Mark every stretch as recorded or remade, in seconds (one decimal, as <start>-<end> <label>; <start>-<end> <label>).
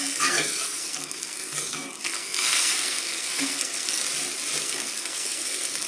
0.0-4.0 remade; 4.0-4.6 recorded; 4.6-5.9 remade